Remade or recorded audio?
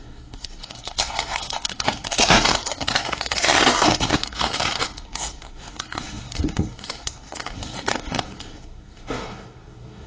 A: remade